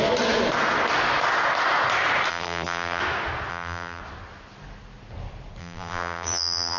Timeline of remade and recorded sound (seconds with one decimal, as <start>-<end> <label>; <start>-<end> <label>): 0.0-2.3 recorded; 2.3-3.0 remade; 3.0-3.5 recorded; 3.5-4.0 remade; 4.0-5.6 recorded; 5.6-6.8 remade